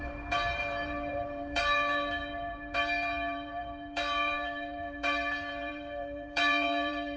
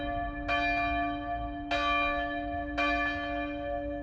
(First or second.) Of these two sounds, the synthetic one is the first